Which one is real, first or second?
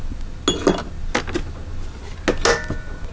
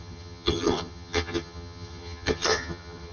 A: first